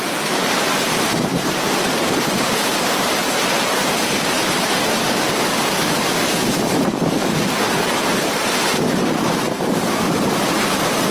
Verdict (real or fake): fake